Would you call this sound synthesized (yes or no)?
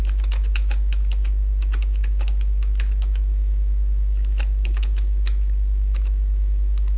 yes